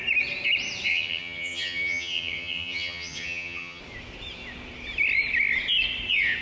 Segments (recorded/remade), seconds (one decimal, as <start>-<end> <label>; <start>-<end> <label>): 0.0-0.9 recorded; 0.9-3.8 remade; 3.8-6.4 recorded